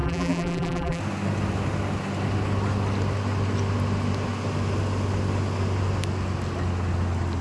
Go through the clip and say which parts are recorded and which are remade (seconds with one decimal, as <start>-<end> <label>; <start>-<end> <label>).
0.0-1.0 remade; 1.0-7.4 recorded